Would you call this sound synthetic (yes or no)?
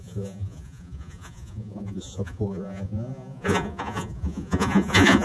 yes